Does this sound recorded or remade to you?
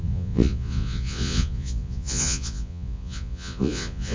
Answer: remade